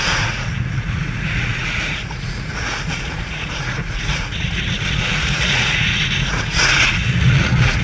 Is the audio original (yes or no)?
no